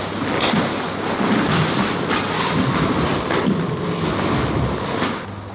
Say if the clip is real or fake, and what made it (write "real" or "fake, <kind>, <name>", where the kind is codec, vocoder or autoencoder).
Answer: real